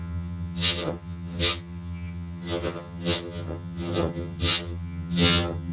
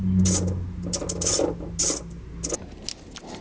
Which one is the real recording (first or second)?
second